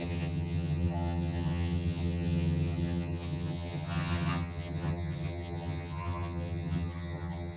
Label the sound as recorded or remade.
remade